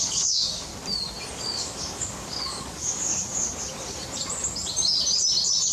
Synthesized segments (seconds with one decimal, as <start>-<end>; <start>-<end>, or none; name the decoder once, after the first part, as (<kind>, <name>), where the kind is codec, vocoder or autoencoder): 0.0-0.7 (codec, DAC); 1.3-3.1